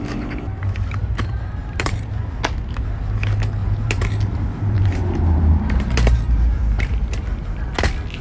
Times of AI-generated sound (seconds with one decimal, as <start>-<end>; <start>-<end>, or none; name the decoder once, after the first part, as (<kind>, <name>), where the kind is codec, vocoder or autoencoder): 1.6-2.2 (vocoder, BigVGAN v2); 3.6-7.6

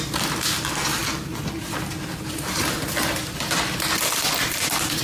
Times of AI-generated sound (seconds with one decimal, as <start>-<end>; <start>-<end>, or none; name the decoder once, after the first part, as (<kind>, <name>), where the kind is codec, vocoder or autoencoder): none

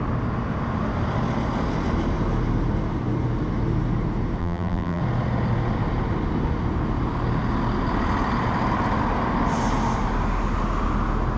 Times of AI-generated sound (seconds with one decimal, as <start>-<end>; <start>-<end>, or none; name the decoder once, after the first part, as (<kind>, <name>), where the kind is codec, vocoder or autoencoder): 4.4-5.0 (vocoder, BigVGAN v2)